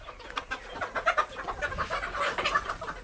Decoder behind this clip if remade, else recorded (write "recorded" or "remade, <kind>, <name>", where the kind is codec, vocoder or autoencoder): recorded